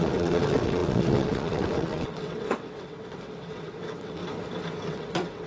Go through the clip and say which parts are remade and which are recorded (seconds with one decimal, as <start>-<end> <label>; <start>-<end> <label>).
0.0-4.2 remade; 4.2-4.9 recorded; 4.9-5.5 remade